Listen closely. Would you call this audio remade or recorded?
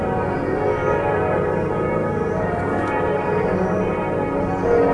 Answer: remade